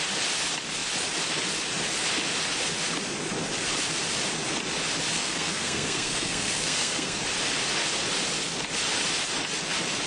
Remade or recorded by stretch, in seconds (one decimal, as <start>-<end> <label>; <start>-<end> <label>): 0.0-5.1 recorded; 5.1-7.2 remade; 7.2-10.1 recorded